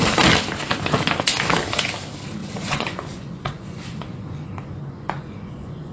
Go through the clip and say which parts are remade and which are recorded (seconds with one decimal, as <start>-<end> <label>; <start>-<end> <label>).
0.0-2.4 recorded; 2.4-5.9 remade